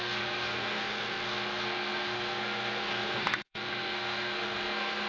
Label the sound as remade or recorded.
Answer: remade